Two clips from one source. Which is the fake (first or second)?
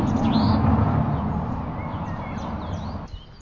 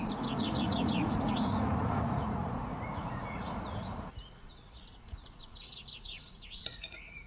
second